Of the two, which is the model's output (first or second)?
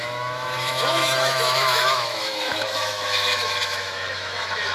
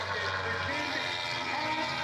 first